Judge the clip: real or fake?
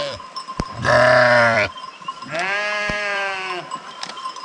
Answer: fake